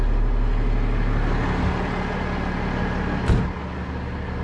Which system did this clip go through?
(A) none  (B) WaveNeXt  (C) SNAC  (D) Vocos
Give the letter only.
A